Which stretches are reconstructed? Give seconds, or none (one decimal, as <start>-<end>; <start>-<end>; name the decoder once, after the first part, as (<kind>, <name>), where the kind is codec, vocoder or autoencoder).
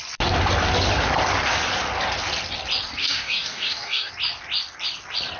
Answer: 3.0-4.1 (codec, DAC)